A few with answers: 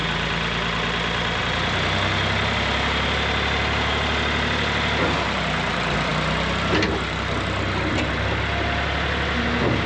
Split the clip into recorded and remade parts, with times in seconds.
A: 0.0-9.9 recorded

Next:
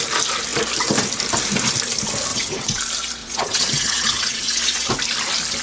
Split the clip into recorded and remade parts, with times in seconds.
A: 0.0-2.3 recorded; 2.3-2.8 remade; 2.8-3.2 recorded; 3.2-4.9 remade; 4.9-5.6 recorded

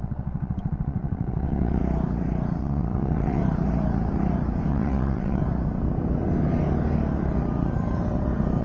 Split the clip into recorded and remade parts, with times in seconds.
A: 0.0-1.8 remade; 1.8-2.6 recorded; 2.6-3.4 remade; 3.4-4.7 recorded; 4.7-5.4 remade; 5.4-8.6 recorded

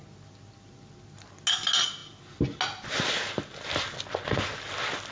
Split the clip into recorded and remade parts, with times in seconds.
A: 0.0-5.1 recorded

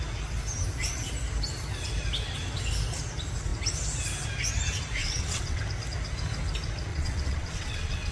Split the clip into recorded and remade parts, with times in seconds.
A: 0.0-5.0 recorded; 5.0-5.6 remade; 5.6-6.9 recorded; 6.9-8.1 remade

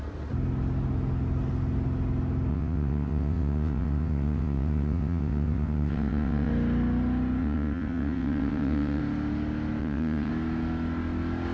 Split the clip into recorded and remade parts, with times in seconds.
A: 0.0-2.5 recorded; 2.5-6.5 remade; 6.5-7.4 recorded; 7.4-9.0 remade; 9.0-9.8 recorded; 9.8-10.3 remade; 10.3-11.5 recorded

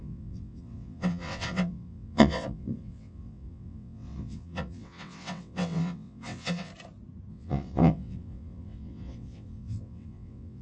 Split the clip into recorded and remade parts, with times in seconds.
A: 0.0-6.7 remade; 6.7-7.3 recorded; 7.3-10.6 remade

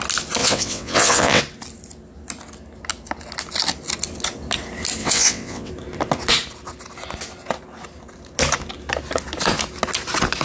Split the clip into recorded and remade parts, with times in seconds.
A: 0.0-0.4 recorded; 0.4-1.4 remade; 1.4-5.0 recorded; 5.0-5.7 remade; 5.7-10.4 recorded